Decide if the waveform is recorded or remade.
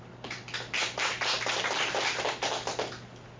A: recorded